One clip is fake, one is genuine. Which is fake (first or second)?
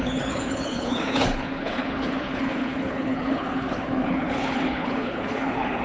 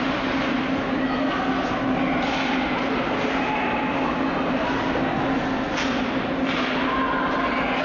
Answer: first